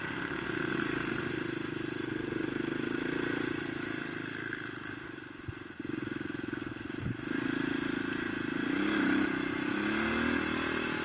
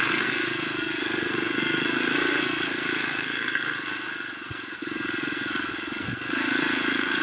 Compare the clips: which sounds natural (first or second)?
first